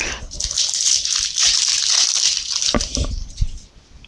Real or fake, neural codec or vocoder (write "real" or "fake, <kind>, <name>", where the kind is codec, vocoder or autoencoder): real